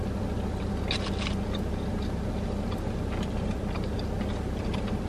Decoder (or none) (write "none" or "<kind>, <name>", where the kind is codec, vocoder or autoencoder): none